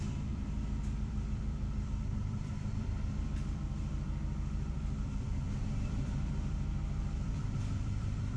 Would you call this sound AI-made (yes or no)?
yes